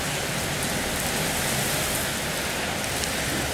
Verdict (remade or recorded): recorded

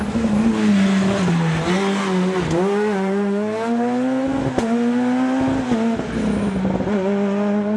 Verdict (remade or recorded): recorded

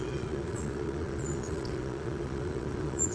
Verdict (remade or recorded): remade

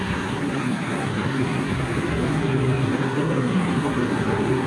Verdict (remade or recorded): remade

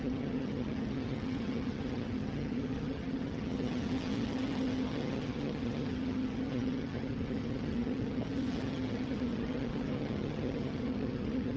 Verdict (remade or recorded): remade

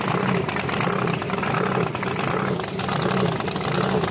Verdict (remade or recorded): recorded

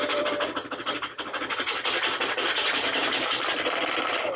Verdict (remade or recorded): recorded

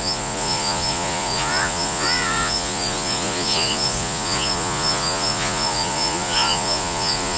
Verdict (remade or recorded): remade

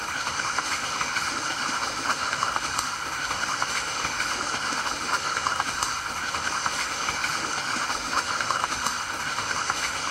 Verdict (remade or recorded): remade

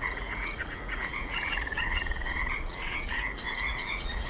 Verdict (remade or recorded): remade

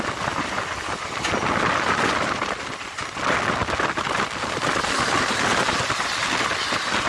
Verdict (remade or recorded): recorded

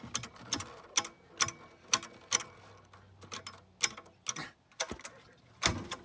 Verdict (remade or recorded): recorded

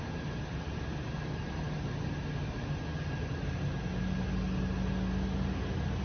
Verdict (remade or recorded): recorded